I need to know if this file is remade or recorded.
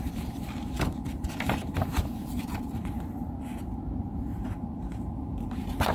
remade